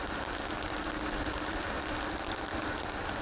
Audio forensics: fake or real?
real